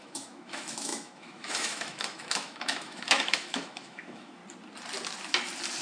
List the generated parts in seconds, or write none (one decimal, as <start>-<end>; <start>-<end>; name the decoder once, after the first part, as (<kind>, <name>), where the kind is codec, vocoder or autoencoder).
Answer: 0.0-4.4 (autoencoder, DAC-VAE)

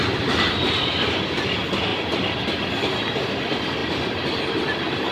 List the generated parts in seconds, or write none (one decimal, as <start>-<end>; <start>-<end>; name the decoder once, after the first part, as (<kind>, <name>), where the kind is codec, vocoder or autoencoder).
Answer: none

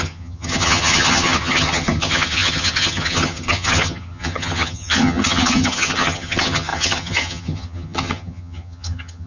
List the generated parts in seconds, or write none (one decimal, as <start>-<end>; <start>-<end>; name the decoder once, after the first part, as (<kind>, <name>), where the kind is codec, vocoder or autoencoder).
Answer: 0.0-9.3 (vocoder, HiFi-GAN)

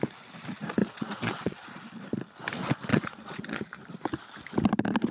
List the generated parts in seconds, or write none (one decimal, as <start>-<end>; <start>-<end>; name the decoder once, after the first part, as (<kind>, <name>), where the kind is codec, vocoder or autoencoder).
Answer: 0.8-1.8 (vocoder, Vocos); 2.9-3.6

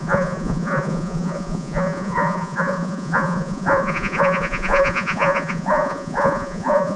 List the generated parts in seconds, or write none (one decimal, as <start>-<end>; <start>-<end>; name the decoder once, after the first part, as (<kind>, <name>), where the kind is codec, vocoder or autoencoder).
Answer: 0.0-7.0 (vocoder, Vocos)

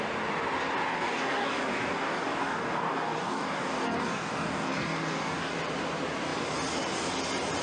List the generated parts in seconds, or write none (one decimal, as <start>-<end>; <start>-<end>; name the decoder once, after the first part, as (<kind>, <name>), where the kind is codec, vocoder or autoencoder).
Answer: 0.9-5.5 (codec, DAC)

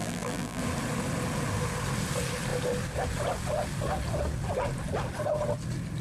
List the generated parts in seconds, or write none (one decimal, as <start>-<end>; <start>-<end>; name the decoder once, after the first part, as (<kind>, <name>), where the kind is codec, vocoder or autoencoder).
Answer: 0.0-0.6 (vocoder, BigVGAN v2)